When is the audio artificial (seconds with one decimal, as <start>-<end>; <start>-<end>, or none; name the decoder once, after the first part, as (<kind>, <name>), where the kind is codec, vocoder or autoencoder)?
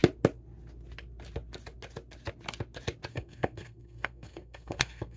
3.1-5.2 (codec, SNAC)